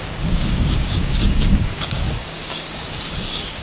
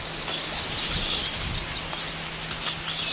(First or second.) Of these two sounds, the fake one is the first